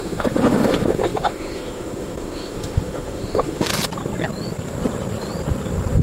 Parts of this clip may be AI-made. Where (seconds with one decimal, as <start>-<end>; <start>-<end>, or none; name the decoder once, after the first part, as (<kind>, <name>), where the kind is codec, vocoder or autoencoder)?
0.0-3.7 (autoencoder, DAC-VAE)